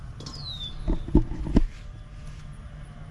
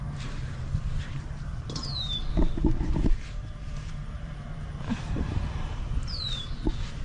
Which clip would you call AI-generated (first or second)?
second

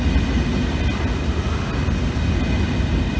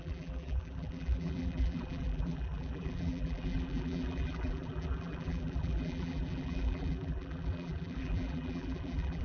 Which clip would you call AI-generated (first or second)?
second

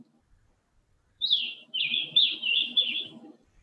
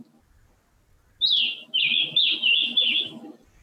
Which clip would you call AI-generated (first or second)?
first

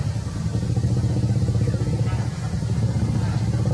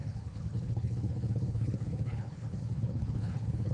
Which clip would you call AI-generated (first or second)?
second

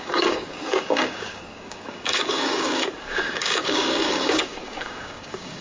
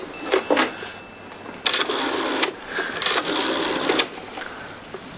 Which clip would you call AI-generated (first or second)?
first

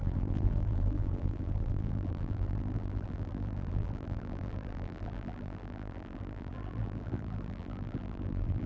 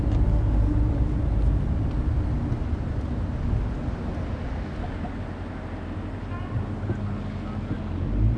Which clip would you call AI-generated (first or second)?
first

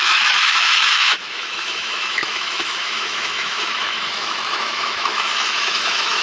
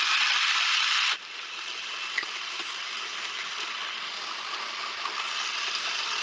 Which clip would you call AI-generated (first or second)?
first